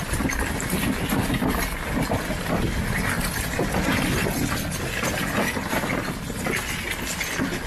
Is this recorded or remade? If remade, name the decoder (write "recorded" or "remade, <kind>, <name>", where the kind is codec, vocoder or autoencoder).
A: recorded